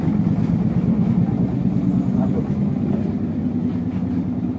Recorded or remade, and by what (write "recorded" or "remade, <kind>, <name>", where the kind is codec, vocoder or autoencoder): recorded